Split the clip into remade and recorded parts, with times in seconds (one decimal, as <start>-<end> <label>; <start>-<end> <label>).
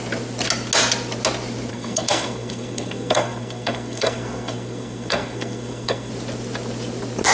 0.0-1.7 recorded; 1.7-6.1 remade; 6.1-7.3 recorded